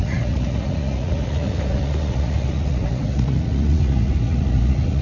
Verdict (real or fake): fake